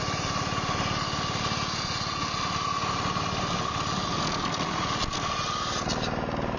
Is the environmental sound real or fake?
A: real